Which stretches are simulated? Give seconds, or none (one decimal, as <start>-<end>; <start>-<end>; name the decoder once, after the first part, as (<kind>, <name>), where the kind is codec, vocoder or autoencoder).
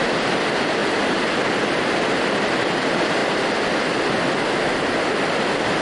0.8-1.3 (vocoder, BigVGAN v2); 3.2-4.0